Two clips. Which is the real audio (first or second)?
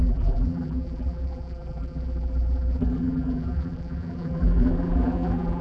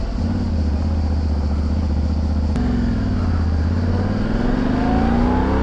second